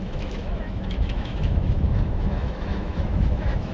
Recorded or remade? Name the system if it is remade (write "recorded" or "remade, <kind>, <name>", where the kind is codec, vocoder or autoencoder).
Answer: remade, autoencoder, DAC-VAE